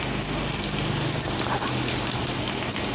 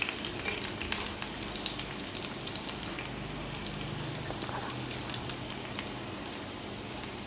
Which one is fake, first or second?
second